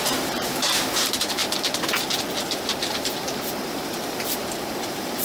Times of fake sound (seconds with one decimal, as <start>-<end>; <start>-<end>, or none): 0.0-1.4; 2.3-5.2